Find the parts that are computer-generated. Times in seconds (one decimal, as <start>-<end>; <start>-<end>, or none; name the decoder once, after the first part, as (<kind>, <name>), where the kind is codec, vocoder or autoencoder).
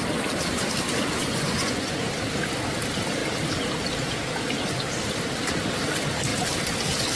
1.3-2.1 (vocoder, Vocos)